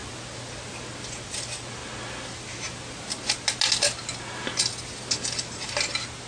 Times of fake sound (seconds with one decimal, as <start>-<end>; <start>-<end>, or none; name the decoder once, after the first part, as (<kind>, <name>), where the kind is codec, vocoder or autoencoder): none